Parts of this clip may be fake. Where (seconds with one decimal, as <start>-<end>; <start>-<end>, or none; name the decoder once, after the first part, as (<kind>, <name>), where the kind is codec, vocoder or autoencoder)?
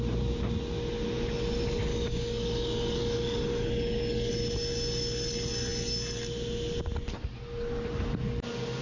1.9-4.3 (codec, DAC)